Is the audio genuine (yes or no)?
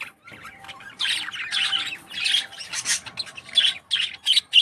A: yes